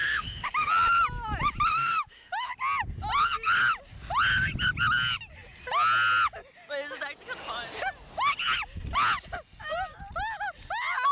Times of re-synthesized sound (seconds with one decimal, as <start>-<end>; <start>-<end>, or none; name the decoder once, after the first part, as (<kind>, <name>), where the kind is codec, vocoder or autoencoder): 0.0-0.7 (autoencoder, DAC-VAE); 1.7-2.5

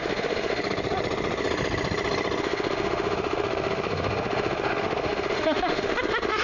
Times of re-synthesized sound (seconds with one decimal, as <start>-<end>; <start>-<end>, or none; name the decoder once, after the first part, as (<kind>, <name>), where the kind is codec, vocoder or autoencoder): 0.0-0.6 (autoencoder, DAC-VAE); 2.4-6.4

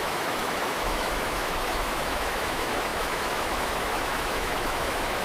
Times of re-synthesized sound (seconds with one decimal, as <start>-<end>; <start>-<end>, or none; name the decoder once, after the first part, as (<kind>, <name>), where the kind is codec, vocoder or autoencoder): 0.0-5.2 (autoencoder, DAC-VAE)

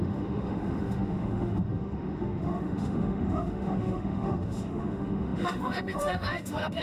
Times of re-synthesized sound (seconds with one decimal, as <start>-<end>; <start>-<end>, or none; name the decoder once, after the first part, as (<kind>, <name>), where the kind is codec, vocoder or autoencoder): 0.0-6.8 (autoencoder, DAC-VAE)